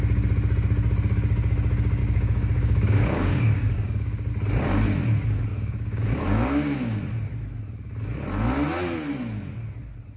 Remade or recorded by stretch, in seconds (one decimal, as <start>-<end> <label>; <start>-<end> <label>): 0.0-2.0 recorded; 2.0-4.3 remade; 4.3-5.5 recorded; 5.5-7.0 remade; 7.0-10.2 recorded